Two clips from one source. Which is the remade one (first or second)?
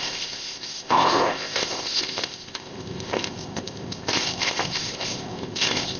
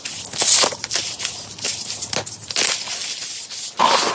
first